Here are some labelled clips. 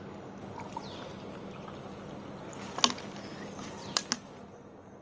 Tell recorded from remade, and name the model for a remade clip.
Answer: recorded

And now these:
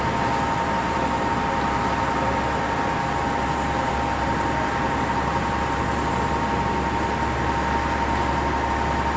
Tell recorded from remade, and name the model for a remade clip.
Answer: recorded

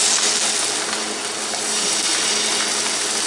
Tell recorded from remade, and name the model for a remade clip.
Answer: recorded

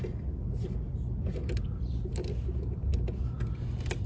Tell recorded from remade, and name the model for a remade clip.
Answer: recorded